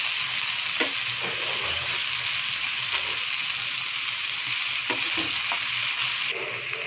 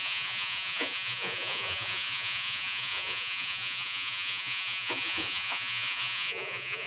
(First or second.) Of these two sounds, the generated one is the second